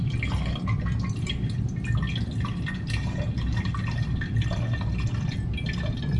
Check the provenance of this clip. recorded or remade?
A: recorded